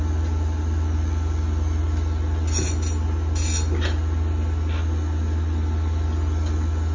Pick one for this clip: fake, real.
real